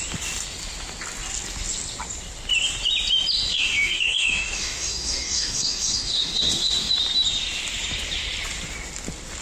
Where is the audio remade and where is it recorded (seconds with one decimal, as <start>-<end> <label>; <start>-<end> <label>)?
0.0-3.5 recorded; 3.5-6.9 remade; 6.9-9.4 recorded